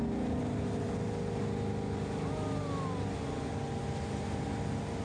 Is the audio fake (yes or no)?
no